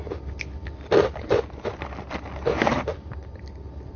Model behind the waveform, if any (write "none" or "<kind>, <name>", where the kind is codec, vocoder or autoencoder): none